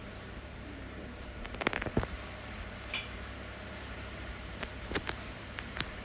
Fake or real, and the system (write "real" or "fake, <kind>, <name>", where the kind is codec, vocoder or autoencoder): fake, vocoder, BigVGAN v2